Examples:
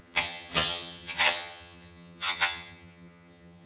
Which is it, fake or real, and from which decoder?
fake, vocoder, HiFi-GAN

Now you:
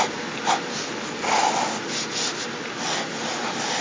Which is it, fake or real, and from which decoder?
real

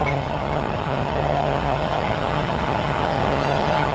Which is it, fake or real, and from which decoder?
fake, vocoder, HiFi-GAN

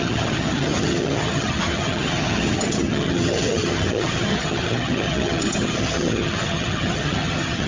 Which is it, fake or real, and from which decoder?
fake, vocoder, HiFi-GAN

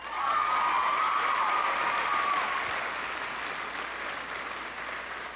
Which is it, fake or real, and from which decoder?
real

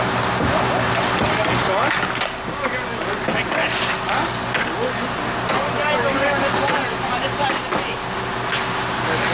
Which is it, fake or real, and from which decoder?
real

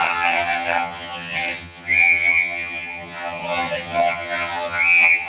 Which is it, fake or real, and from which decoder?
fake, vocoder, HiFi-GAN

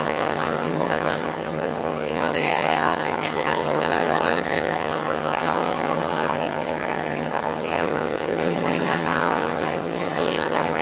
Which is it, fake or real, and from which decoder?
fake, vocoder, HiFi-GAN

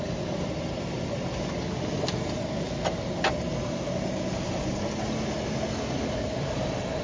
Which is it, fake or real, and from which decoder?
real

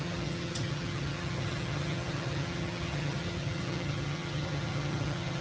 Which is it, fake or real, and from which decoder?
fake, vocoder, HiFi-GAN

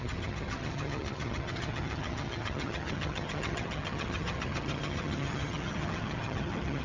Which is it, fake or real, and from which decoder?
fake, vocoder, HiFi-GAN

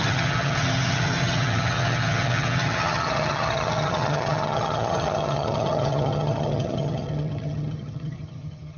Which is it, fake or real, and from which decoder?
fake, vocoder, HiFi-GAN